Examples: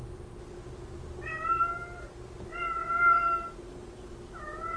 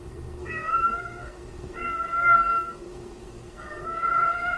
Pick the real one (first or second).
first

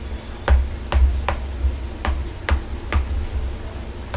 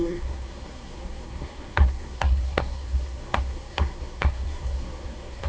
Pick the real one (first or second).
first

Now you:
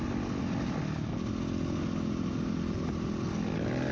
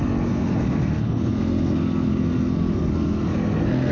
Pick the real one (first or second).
first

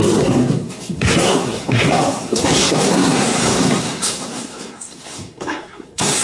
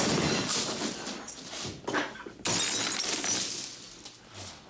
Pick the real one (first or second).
second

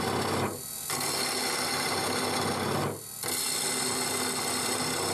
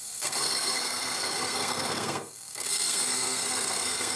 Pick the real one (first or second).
first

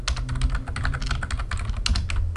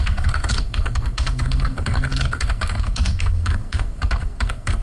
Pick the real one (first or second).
first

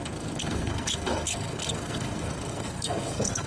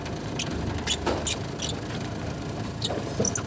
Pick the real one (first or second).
second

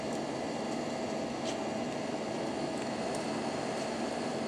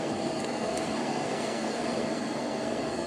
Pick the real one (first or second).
first